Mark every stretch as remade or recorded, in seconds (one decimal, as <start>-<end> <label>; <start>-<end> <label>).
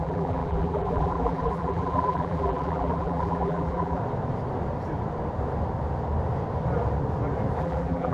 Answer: 0.0-4.0 remade; 4.0-7.6 recorded; 7.6-8.1 remade